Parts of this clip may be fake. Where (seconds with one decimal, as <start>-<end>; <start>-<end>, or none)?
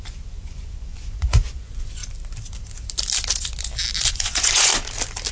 0.0-2.0; 4.1-4.7